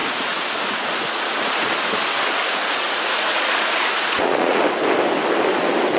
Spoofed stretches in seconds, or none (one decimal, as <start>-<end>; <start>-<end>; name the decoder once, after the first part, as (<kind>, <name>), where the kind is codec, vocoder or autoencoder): 0.0-1.7 (vocoder, Vocos); 2.5-4.6

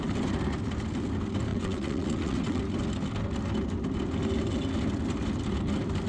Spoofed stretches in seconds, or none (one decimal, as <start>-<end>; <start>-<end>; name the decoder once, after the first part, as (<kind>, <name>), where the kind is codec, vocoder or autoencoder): 1.5-2.6 (vocoder, WaveNeXt)